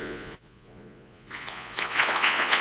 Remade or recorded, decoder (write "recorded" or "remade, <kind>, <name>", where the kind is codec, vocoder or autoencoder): remade, vocoder, Vocos